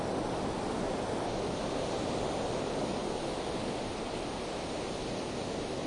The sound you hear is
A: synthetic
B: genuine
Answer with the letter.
B